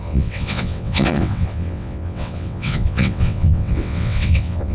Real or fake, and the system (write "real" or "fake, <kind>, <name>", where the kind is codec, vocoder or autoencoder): fake, vocoder, WaveNeXt